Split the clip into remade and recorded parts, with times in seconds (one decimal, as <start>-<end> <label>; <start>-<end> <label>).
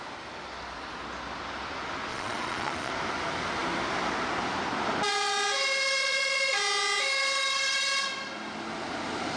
0.0-2.1 recorded; 2.1-2.9 remade; 2.9-6.0 recorded; 6.0-6.6 remade; 6.6-9.4 recorded